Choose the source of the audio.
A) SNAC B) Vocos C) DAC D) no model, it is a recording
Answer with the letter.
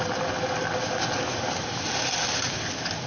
D